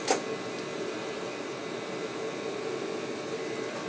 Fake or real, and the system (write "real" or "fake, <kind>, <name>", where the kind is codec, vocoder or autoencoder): real